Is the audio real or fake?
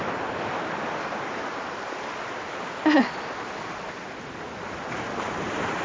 real